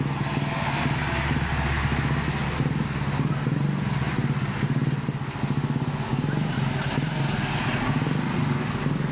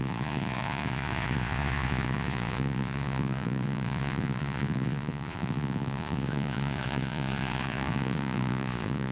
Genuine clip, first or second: first